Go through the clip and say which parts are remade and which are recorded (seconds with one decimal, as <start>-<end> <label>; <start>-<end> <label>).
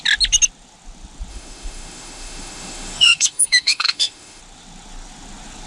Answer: 0.0-1.3 recorded; 1.3-4.4 remade; 4.4-5.7 recorded